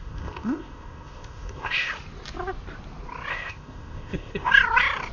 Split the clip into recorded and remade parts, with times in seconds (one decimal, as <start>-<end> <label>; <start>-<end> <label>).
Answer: 0.0-1.9 remade; 1.9-3.3 recorded; 3.3-4.5 remade; 4.5-5.1 recorded